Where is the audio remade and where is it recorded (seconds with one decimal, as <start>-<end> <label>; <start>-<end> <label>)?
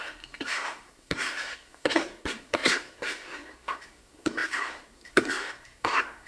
0.0-6.3 remade